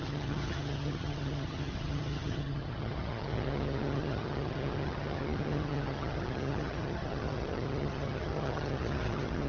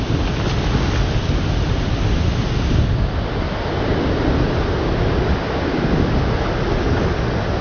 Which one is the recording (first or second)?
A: second